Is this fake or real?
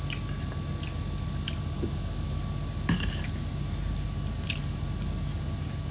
real